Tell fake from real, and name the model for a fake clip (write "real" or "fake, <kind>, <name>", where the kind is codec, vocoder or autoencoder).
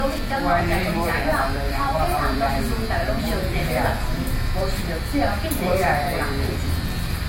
fake, vocoder, BigVGAN v2